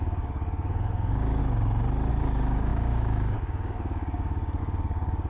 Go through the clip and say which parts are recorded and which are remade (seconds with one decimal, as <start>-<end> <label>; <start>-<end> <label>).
0.0-1.4 remade; 1.4-2.1 recorded; 2.1-5.3 remade